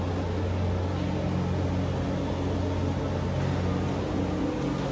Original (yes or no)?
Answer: yes